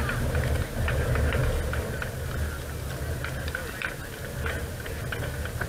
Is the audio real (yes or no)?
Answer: yes